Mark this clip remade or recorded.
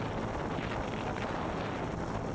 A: recorded